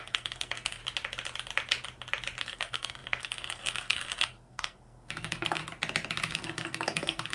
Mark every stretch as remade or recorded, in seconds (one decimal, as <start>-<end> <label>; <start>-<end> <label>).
0.0-0.8 remade; 0.8-2.4 recorded; 2.4-5.6 remade; 5.6-6.3 recorded; 6.3-7.3 remade